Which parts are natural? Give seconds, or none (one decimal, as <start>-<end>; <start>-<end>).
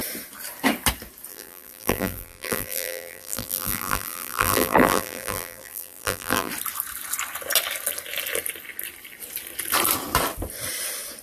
0.0-1.3; 6.5-11.2